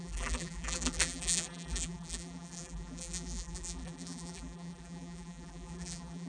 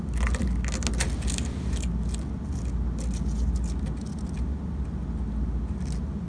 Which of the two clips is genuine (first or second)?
second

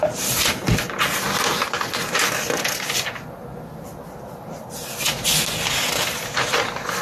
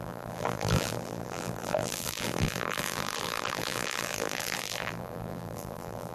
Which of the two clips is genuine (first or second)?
first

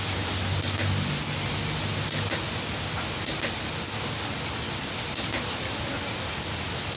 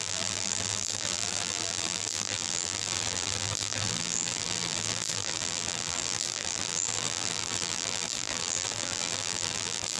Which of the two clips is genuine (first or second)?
first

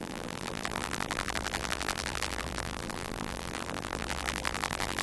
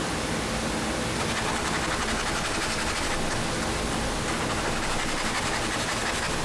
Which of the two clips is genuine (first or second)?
second